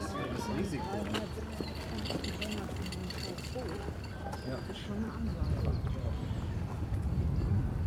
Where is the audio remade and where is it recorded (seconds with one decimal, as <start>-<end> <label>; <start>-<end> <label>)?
0.0-3.0 recorded; 3.0-3.8 remade; 3.8-5.3 recorded; 5.3-5.9 remade; 5.9-7.9 recorded